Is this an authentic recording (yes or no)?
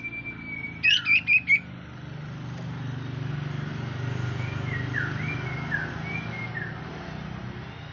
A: yes